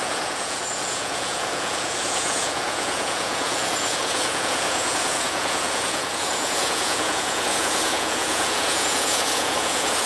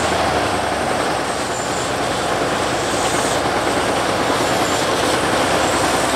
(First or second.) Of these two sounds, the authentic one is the second